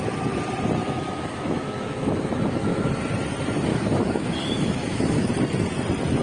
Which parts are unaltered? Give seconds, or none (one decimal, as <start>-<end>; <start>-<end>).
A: 0.0-0.8; 2.9-3.7; 5.3-6.2